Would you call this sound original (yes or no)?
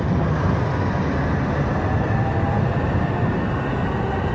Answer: yes